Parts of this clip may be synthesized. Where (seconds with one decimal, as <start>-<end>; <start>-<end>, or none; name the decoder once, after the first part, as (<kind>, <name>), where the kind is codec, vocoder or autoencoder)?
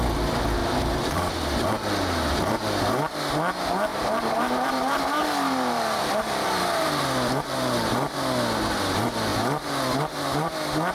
0.6-1.2 (vocoder, BigVGAN v2); 3.9-7.9; 9.3-10.5